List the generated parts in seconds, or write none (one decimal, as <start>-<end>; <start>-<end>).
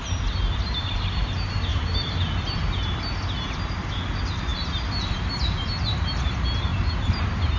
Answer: 1.7-2.3; 6.7-7.6